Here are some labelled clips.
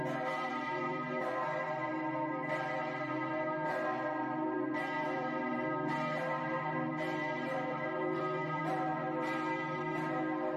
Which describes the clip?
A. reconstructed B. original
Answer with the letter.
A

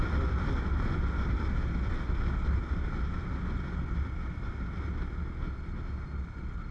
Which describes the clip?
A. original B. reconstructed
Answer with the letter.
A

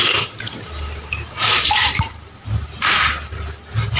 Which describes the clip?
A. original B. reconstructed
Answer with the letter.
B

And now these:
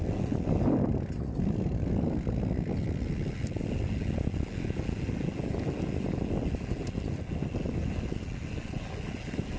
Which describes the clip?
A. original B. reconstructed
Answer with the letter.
A